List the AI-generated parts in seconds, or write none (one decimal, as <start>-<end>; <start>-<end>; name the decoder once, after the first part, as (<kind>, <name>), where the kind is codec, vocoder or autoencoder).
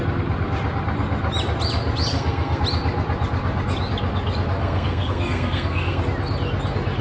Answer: 2.1-2.6 (codec, SNAC); 4.6-6.0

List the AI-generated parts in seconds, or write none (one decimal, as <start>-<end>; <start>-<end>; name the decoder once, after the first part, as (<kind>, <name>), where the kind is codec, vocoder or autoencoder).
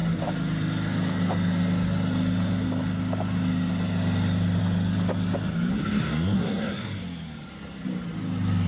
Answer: 5.7-7.0 (codec, SNAC)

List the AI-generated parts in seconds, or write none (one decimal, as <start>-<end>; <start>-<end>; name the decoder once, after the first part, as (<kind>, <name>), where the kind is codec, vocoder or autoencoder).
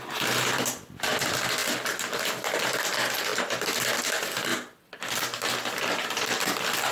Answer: none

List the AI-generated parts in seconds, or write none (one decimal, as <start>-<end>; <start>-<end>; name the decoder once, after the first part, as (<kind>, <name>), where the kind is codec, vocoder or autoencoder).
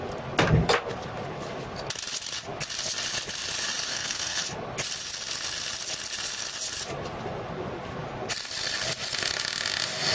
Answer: 3.9-4.4 (codec, SNAC)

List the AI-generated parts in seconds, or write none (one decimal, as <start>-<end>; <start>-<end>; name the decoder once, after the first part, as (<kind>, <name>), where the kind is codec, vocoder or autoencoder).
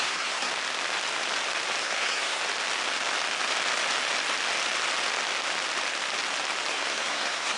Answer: 0.0-0.5 (codec, SNAC); 1.8-2.4; 6.7-7.6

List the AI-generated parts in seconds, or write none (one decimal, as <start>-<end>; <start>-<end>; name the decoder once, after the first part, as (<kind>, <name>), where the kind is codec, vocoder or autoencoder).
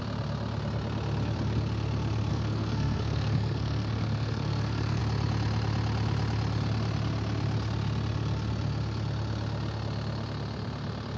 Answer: 2.3-5.0 (codec, SNAC)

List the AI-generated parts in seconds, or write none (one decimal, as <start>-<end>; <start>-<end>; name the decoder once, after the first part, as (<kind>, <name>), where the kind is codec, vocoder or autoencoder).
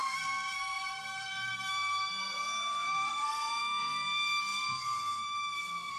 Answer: 0.0-6.0 (codec, SNAC)